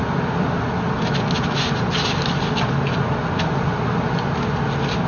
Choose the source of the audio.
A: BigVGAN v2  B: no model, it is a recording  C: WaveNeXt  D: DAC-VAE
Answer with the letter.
B